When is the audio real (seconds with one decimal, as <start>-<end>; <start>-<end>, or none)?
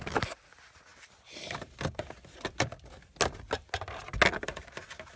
0.0-5.2